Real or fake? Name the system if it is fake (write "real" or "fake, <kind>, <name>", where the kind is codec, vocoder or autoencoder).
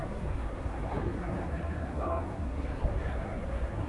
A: fake, codec, SNAC